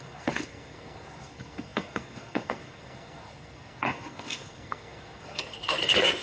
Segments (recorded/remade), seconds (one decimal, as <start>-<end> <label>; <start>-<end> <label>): 0.0-6.2 remade